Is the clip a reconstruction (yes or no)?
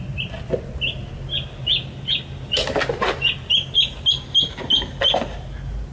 no